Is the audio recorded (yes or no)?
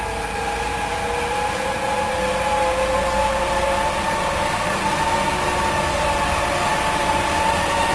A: yes